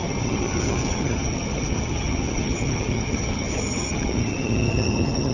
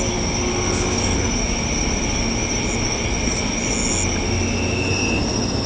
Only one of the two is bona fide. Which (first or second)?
second